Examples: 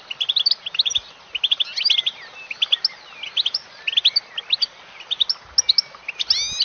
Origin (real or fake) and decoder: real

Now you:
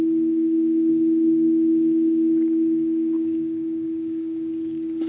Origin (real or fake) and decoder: fake, codec, DAC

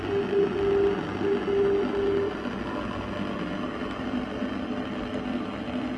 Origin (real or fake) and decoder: real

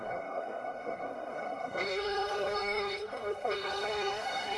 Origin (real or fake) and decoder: fake, codec, SNAC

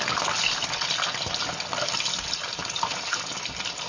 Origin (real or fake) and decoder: real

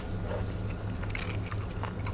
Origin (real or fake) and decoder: real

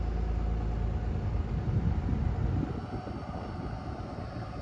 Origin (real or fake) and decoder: real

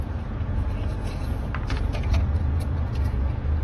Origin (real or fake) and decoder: fake, vocoder, Vocos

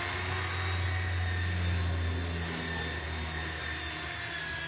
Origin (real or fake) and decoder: real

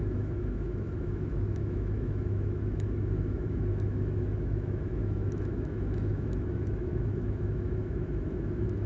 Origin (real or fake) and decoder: fake, autoencoder, DAC-VAE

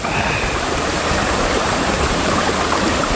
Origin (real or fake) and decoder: fake, vocoder, BigVGAN v2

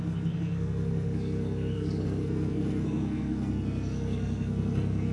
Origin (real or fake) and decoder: fake, codec, SNAC